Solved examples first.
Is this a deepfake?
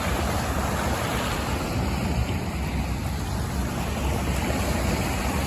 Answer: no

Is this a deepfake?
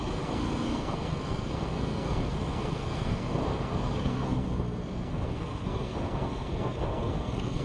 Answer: yes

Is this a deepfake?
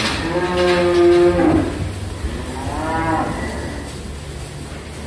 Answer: no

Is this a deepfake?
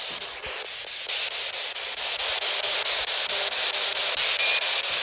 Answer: no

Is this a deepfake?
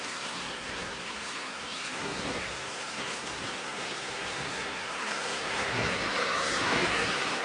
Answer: yes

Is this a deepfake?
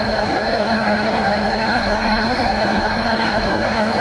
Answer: yes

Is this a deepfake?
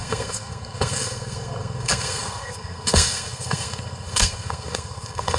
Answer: yes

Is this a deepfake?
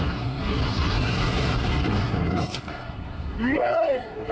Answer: yes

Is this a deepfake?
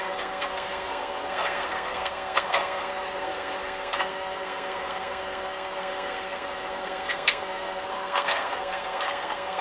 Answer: yes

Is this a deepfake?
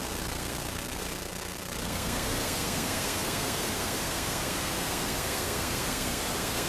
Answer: yes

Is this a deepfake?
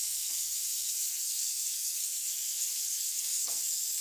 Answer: yes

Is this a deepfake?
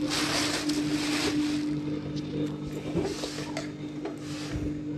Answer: no